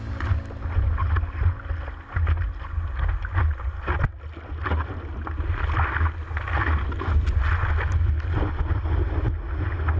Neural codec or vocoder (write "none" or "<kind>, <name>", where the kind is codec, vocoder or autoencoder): none